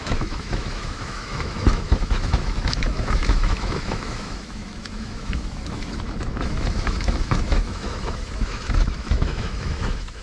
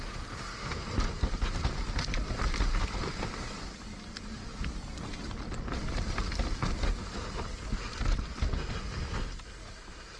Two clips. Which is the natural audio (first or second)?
second